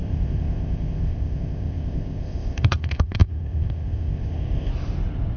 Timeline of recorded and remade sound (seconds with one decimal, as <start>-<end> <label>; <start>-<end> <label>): 0.0-4.7 remade; 4.7-5.4 recorded